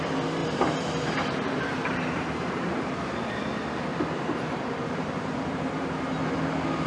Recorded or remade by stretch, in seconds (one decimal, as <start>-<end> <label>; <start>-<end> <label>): 0.0-0.4 recorded; 0.4-2.7 remade; 2.7-3.9 recorded; 3.9-6.0 remade; 6.0-6.9 recorded